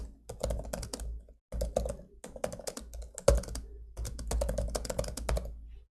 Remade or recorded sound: recorded